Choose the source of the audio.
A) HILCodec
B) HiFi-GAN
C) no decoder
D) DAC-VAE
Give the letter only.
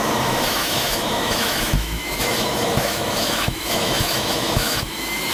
D